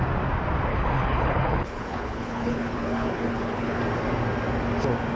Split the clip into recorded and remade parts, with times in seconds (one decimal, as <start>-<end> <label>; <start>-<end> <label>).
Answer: 0.0-0.7 recorded; 0.7-3.8 remade; 3.8-5.2 recorded